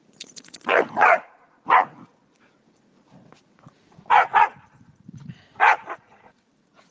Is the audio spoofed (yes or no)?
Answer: yes